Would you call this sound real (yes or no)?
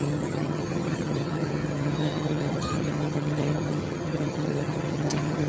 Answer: no